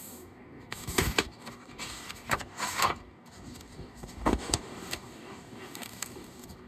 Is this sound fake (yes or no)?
yes